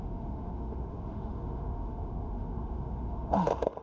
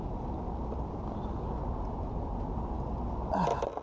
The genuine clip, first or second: second